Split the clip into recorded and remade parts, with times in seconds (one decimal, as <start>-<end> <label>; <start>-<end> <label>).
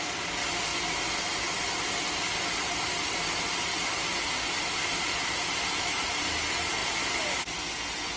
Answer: 0.0-8.2 recorded